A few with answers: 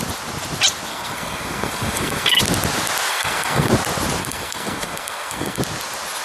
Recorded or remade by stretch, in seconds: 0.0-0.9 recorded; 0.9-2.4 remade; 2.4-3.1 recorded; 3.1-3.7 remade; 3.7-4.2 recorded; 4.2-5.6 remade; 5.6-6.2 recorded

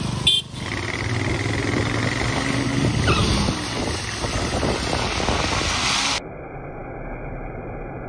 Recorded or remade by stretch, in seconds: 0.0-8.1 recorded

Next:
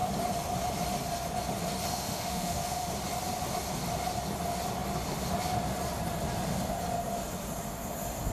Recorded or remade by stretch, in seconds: 0.0-1.9 recorded; 1.9-2.9 remade; 2.9-8.3 recorded